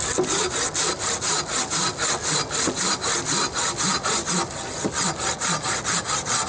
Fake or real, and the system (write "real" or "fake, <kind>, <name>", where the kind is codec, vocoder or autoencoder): real